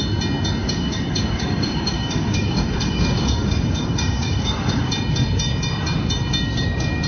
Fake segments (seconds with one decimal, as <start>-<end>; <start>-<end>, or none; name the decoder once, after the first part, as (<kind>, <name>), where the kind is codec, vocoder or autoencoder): 0.6-4.9 (codec, DAC)